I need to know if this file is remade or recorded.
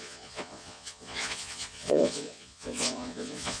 remade